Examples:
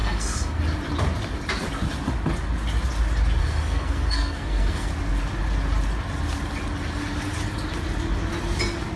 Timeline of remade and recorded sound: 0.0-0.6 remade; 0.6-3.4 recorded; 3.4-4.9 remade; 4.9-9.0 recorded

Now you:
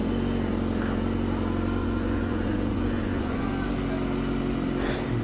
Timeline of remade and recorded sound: 0.0-1.8 recorded; 1.8-3.5 remade; 3.5-5.2 recorded

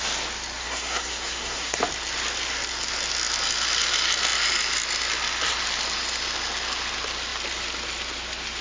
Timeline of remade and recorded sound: 0.0-0.6 recorded; 0.6-1.8 remade; 1.8-8.6 recorded

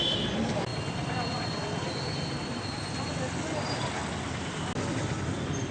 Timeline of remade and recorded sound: 0.0-5.7 recorded